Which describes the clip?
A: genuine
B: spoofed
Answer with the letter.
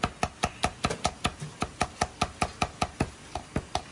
A